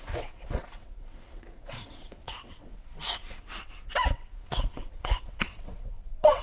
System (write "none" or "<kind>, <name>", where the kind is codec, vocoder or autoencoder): vocoder, WaveNeXt